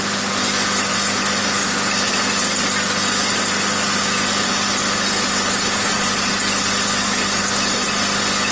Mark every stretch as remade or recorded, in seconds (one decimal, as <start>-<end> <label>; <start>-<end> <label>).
0.0-8.5 recorded